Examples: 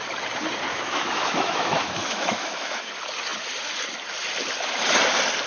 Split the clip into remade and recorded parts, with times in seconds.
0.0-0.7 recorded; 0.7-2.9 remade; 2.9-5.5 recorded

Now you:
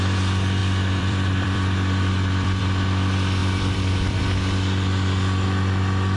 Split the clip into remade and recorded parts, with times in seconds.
0.0-0.6 recorded; 0.6-2.6 remade; 2.6-3.4 recorded; 3.4-4.2 remade; 4.2-6.2 recorded

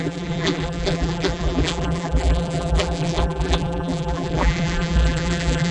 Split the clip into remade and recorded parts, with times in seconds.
0.0-5.7 remade

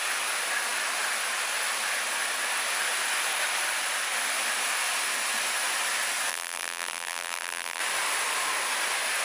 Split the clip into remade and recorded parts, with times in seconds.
0.0-6.3 recorded; 6.3-7.8 remade; 7.8-9.2 recorded